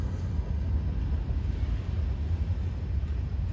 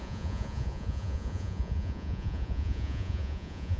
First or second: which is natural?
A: first